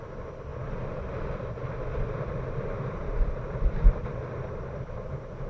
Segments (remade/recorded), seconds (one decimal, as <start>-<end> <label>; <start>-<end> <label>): 0.0-0.5 recorded; 0.5-3.8 remade; 3.8-5.5 recorded

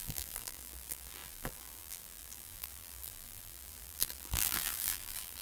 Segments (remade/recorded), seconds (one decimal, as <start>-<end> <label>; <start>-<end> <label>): 0.0-5.4 remade

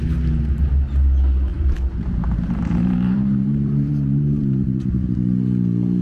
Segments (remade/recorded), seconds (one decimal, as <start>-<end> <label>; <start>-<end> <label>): 0.0-1.5 recorded; 1.5-5.1 remade; 5.1-6.0 recorded

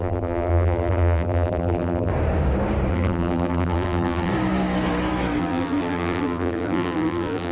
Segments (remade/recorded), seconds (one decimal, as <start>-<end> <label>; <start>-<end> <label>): 0.0-2.1 remade; 2.1-2.9 recorded; 2.9-4.3 remade; 4.3-5.4 recorded; 5.4-7.5 remade

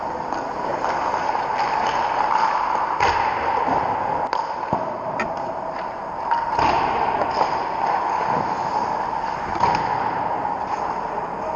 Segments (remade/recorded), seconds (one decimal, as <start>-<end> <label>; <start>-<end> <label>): 0.0-11.6 recorded